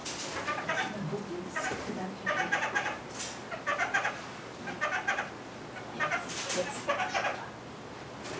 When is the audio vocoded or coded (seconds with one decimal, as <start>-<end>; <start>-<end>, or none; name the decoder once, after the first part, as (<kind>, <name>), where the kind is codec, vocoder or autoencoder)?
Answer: none

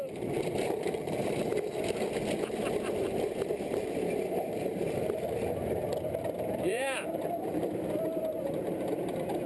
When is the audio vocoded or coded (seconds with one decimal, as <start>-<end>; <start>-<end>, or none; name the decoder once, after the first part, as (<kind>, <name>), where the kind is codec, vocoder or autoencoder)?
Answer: 0.0-1.5 (vocoder, BigVGAN v2); 2.6-9.5

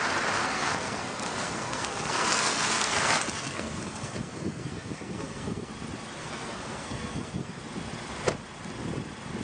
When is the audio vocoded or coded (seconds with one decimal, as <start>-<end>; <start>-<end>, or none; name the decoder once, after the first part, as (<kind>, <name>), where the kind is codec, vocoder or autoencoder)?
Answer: 0.4-5.7 (codec, SNAC); 6.2-7.6

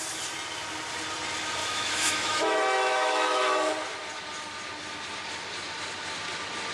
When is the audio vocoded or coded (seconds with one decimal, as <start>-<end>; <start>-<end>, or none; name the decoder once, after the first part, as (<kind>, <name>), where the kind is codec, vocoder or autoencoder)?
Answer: 1.6-3.7 (autoencoder, DAC-VAE)

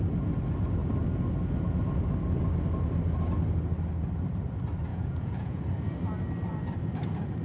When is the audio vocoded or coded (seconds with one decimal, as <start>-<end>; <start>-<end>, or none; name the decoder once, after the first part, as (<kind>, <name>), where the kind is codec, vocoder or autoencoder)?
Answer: 4.9-5.6 (vocoder, Vocos)